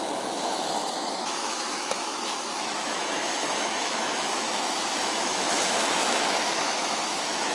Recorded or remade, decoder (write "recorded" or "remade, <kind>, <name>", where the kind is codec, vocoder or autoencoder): remade, autoencoder, DAC-VAE